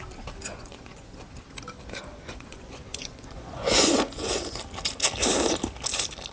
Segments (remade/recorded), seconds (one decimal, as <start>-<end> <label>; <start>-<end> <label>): 0.0-0.5 recorded; 0.5-1.2 remade; 1.2-2.1 recorded; 2.1-4.6 remade; 4.6-6.3 recorded